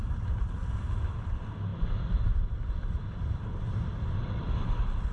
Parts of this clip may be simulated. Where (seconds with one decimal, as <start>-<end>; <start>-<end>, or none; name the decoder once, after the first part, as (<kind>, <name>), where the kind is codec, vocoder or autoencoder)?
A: 0.0-1.2 (vocoder, BigVGAN v2)

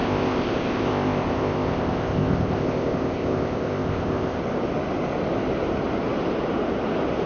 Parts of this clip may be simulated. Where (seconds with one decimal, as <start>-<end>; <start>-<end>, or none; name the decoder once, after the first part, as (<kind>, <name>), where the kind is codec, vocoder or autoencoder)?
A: 0.0-4.4 (codec, ZipCodec)